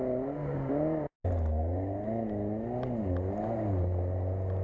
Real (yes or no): yes